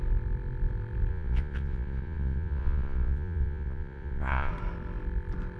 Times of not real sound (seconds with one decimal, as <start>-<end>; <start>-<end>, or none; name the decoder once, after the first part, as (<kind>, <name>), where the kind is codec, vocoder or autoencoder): 1.1-4.5 (vocoder, Vocos)